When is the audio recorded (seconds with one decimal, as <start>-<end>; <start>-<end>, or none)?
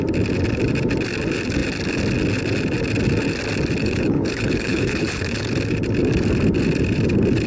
0.0-3.8; 5.5-7.5